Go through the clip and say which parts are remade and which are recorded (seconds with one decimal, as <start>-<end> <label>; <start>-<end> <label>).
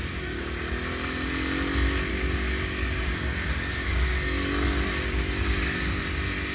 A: 0.0-0.6 remade; 0.6-2.1 recorded; 2.1-6.0 remade; 6.0-6.5 recorded